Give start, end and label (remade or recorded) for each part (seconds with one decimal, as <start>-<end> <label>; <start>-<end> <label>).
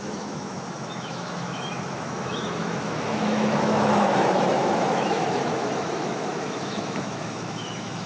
0.0-8.1 remade